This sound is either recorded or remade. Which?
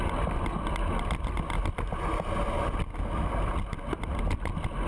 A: recorded